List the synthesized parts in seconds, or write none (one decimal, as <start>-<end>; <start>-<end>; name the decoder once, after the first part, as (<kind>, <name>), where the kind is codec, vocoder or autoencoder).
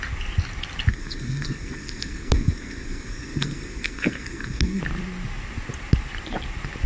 0.9-4.8 (codec, SNAC)